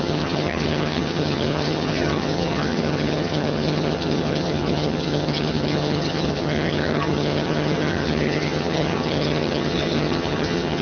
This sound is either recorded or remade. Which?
remade